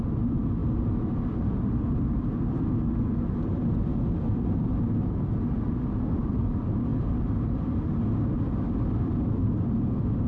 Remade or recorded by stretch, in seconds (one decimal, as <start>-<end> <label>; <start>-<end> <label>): 0.0-10.3 recorded